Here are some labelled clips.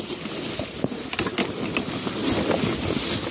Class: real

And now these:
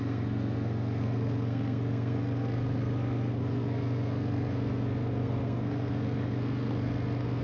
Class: fake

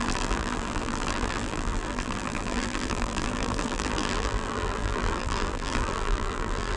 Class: fake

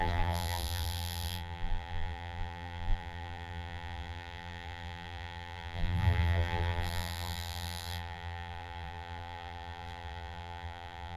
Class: fake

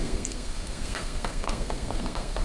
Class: fake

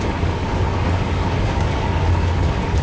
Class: fake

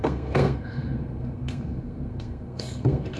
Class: fake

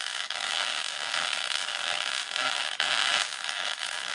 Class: fake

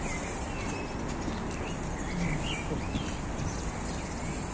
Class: real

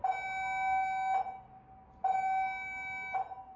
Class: real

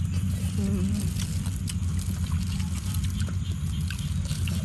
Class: real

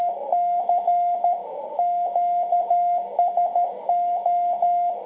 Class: fake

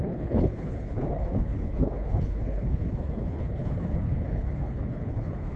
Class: fake